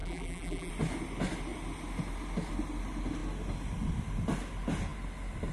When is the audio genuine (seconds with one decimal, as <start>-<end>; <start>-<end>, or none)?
0.7-5.5